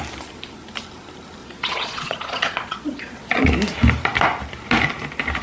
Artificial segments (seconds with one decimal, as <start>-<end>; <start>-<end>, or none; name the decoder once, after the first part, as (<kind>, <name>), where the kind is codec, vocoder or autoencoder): 1.4-3.5 (vocoder, Vocos)